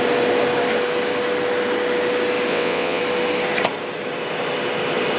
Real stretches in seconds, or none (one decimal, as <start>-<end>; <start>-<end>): 0.0-2.5; 3.0-5.2